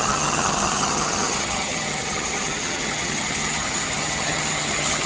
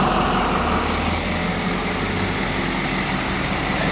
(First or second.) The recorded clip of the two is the second